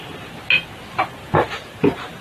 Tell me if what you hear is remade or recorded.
recorded